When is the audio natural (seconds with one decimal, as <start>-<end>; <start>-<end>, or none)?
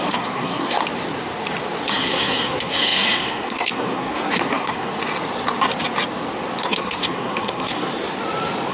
0.8-1.9; 4.9-6.6; 7.9-8.7